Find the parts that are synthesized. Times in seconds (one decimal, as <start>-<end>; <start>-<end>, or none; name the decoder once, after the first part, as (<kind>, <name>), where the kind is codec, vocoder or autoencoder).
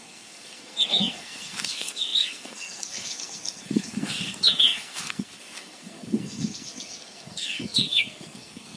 0.0-8.8 (codec, SNAC)